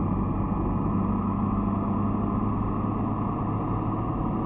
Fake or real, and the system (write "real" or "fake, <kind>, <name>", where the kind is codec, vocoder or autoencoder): real